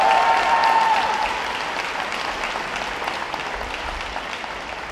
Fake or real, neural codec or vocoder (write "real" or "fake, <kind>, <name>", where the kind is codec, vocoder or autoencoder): fake, vocoder, BigVGAN v2